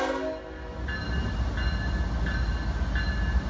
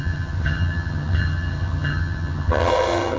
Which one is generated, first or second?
second